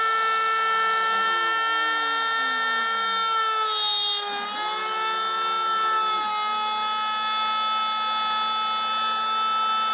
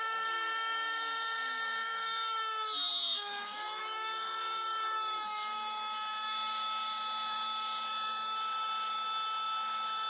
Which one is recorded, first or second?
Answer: first